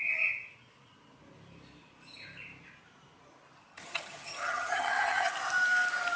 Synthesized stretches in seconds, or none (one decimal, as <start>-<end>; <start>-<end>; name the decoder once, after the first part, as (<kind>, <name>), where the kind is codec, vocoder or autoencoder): 3.7-5.3 (vocoder, HiFi-GAN)